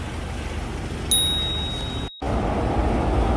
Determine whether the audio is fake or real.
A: real